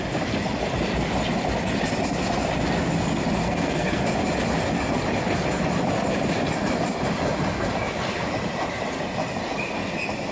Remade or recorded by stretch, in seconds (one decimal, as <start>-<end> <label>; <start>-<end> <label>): 0.0-3.4 recorded; 3.4-4.0 remade; 4.0-10.3 recorded